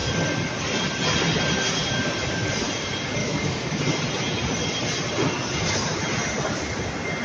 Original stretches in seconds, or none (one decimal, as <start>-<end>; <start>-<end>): 0.0-3.2; 3.8-7.2